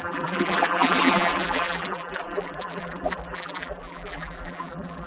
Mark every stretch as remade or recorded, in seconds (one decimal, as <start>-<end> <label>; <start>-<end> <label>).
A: 0.0-5.1 remade